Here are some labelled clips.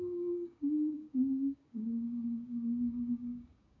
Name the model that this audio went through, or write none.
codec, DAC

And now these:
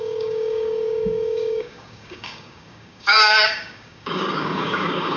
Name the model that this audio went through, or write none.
codec, DAC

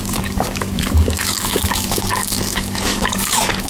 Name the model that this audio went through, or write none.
codec, DAC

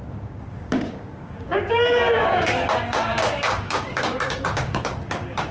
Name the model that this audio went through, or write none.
codec, DAC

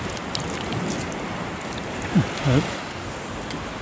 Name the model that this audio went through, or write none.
none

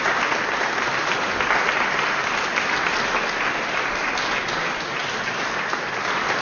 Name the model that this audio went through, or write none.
none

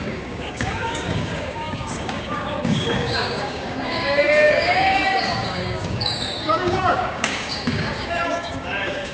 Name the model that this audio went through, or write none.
codec, DAC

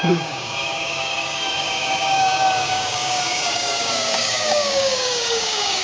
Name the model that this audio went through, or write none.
codec, DAC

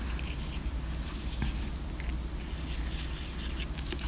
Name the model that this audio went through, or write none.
none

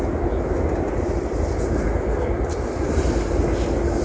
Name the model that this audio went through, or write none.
none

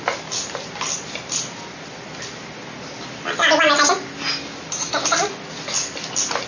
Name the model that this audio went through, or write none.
none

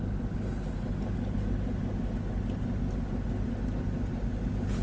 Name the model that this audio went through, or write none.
none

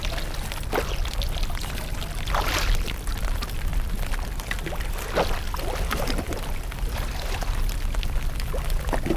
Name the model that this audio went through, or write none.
none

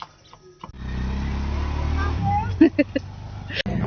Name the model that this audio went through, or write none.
none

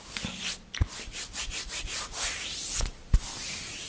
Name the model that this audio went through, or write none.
none